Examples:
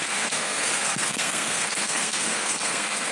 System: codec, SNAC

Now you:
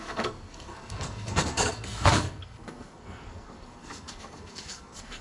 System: codec, SNAC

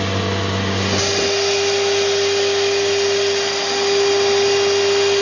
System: none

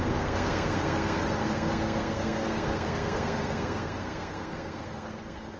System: codec, SNAC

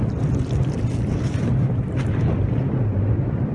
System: none